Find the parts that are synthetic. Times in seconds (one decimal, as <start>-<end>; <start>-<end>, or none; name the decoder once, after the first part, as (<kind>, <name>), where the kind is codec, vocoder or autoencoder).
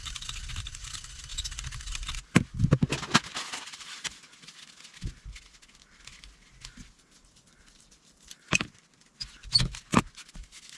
none